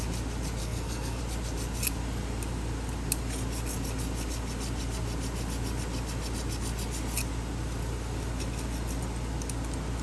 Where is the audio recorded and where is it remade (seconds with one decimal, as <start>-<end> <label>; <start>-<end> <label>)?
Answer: 0.0-0.6 recorded; 0.6-1.2 remade; 1.2-10.0 recorded